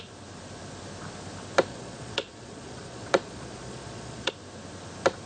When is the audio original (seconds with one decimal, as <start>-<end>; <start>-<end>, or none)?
0.0-1.7; 4.3-5.3